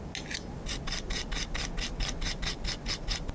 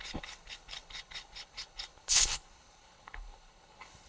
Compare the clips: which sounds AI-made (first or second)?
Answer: second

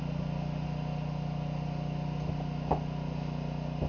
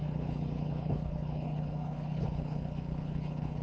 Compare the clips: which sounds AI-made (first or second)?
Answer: second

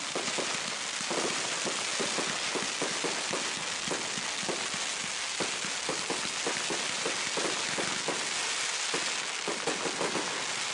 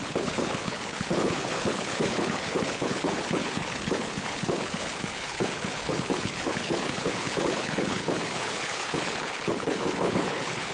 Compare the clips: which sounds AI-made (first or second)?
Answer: second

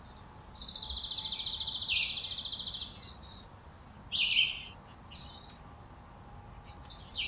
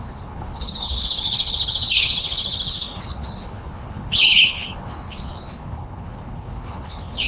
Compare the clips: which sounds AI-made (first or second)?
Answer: second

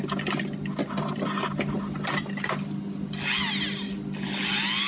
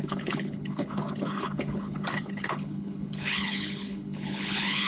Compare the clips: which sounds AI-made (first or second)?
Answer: second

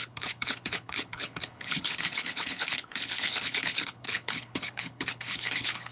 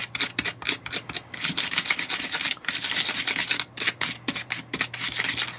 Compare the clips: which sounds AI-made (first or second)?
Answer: first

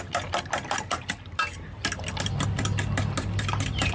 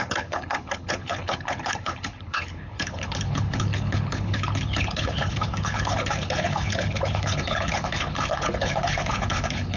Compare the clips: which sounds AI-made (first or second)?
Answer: second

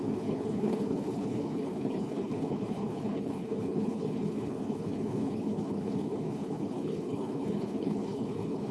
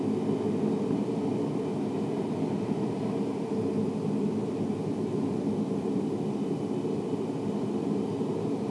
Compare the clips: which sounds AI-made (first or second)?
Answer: first